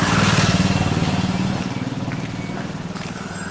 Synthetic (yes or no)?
no